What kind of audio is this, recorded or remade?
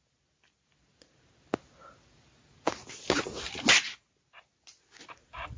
recorded